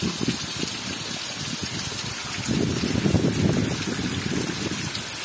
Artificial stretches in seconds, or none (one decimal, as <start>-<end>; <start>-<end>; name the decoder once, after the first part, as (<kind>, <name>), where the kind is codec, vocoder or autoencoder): none